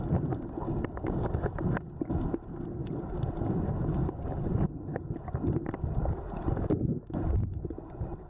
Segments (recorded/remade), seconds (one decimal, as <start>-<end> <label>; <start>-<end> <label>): 0.0-8.3 recorded